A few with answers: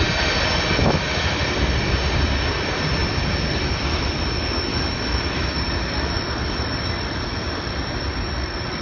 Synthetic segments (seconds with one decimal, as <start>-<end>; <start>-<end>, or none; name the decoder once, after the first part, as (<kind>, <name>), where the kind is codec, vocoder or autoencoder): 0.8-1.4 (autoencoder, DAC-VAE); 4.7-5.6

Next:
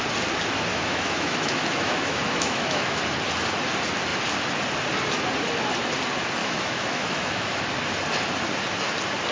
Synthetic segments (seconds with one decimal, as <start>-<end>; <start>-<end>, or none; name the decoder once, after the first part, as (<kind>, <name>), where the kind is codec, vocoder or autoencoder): 0.7-3.0 (autoencoder, DAC-VAE); 6.4-7.6

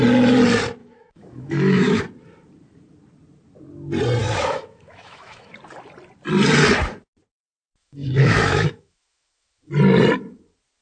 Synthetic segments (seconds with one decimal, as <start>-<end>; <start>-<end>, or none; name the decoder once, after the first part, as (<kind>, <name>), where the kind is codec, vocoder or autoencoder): 0.8-2.0 (autoencoder, DAC-VAE); 4.2-5.5; 7.8-9.7

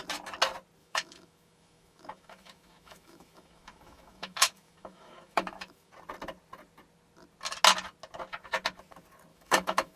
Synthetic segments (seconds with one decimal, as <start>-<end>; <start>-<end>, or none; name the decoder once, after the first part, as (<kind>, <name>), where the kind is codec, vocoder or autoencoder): 0.8-5.9 (autoencoder, DAC-VAE); 9.3-10.0

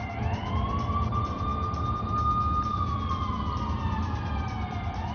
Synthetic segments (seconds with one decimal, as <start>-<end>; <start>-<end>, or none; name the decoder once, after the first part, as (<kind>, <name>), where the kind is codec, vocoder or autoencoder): none

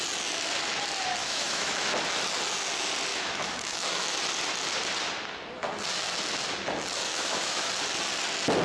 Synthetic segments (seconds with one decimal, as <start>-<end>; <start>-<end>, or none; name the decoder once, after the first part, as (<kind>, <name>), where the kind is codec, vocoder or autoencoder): 1.2-1.9 (autoencoder, DAC-VAE); 3.1-4.2; 7.1-7.7

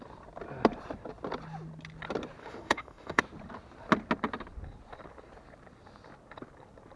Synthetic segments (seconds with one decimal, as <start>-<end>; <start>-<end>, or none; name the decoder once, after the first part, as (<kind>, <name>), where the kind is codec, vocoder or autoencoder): 2.4-3.2 (autoencoder, DAC-VAE)

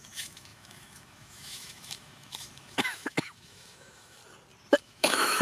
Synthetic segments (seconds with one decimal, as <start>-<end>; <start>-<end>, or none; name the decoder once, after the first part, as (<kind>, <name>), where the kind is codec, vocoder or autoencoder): 0.0-4.2 (autoencoder, DAC-VAE); 4.8-5.4